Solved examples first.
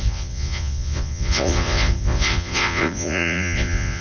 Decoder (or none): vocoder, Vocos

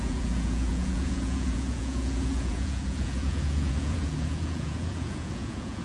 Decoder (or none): vocoder, Vocos